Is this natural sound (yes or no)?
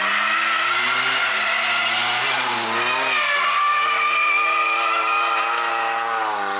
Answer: yes